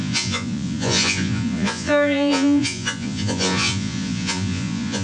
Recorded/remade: remade